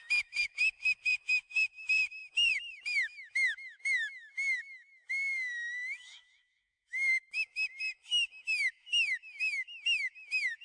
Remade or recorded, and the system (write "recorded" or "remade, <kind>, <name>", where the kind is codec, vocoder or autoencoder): remade, autoencoder, DAC-VAE